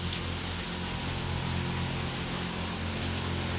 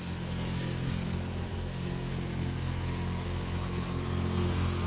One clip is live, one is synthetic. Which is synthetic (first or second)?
second